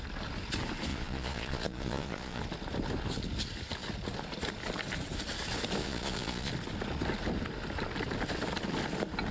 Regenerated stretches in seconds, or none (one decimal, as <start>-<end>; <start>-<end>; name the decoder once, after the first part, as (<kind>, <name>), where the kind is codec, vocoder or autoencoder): 0.9-2.4 (vocoder, Vocos); 5.8-6.5